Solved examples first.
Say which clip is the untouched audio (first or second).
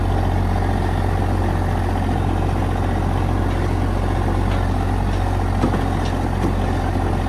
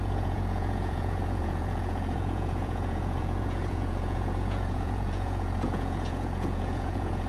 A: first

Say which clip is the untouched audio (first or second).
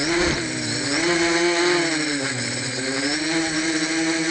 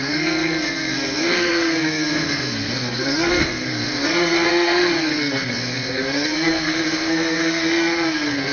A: first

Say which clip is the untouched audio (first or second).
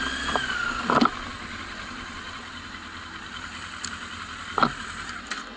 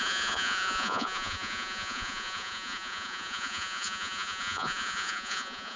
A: first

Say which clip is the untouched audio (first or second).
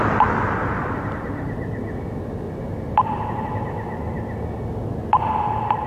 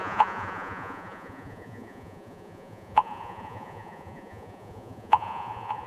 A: first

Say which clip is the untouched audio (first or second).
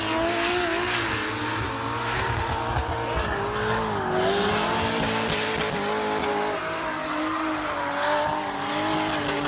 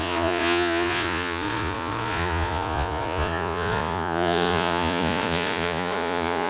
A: first